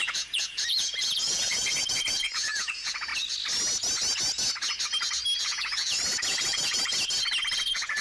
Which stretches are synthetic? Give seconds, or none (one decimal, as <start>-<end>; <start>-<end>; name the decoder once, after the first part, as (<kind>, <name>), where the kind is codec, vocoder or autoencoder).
0.0-3.1 (vocoder, Vocos); 5.4-6.9; 7.6-8.0